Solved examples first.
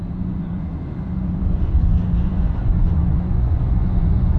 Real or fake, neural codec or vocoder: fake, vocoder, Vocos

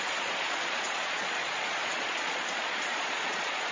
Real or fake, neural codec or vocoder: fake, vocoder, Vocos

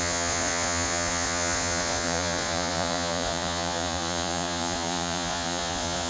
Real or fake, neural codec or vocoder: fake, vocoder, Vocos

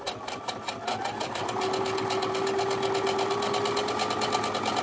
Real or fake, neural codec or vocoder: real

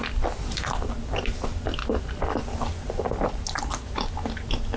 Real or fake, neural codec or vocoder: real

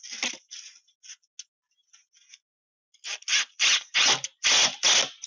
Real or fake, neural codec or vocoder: real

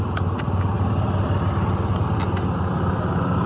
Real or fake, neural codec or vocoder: real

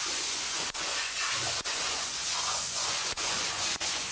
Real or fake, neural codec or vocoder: fake, vocoder, Vocos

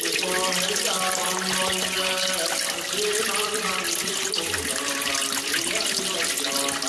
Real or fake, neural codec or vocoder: real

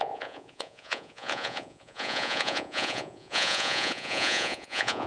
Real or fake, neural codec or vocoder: fake, vocoder, Vocos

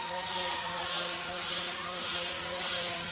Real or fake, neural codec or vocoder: fake, vocoder, Vocos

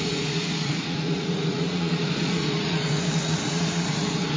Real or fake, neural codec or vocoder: fake, vocoder, Vocos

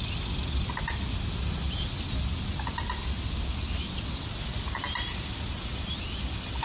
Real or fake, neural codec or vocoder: real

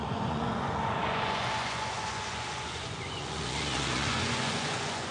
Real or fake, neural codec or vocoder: fake, vocoder, Vocos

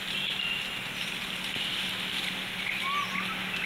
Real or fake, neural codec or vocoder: real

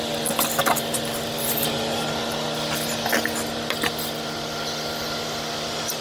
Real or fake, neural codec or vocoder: real